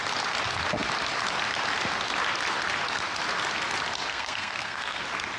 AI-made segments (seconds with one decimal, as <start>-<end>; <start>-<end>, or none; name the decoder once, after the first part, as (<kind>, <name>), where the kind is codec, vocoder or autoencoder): 4.1-5.0 (codec, SNAC)